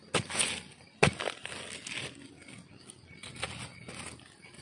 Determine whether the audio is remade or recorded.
recorded